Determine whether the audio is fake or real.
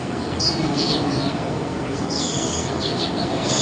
fake